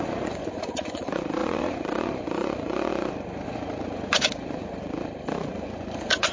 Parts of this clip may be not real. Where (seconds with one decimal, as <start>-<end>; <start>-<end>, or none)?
0.0-4.8; 5.5-6.3